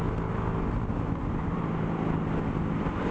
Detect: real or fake real